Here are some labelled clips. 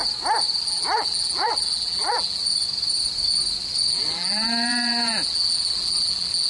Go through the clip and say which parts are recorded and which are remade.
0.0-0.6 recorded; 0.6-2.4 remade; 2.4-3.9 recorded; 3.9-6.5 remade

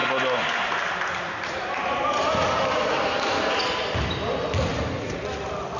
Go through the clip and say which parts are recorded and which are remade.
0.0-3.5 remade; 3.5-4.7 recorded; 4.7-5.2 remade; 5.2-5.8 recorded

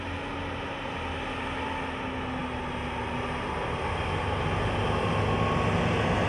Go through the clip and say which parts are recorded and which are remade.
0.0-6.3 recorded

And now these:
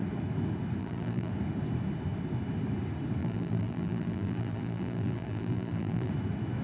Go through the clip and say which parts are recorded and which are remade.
0.0-0.8 recorded; 0.8-1.3 remade; 1.3-3.2 recorded; 3.2-6.1 remade; 6.1-6.6 recorded

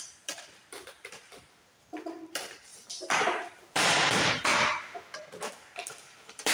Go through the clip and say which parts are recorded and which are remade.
0.0-4.5 remade; 4.5-5.4 recorded; 5.4-6.5 remade

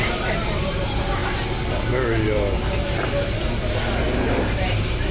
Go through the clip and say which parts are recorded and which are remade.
0.0-1.2 remade; 1.2-4.3 recorded; 4.3-5.1 remade

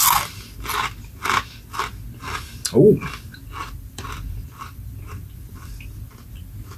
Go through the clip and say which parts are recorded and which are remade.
0.0-3.6 recorded; 3.6-6.1 remade; 6.1-6.8 recorded

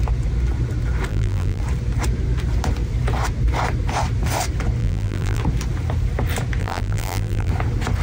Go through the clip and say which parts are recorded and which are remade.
0.0-1.1 recorded; 1.1-1.6 remade; 1.6-4.8 recorded; 4.8-5.4 remade; 5.4-6.6 recorded; 6.6-7.5 remade; 7.5-8.0 recorded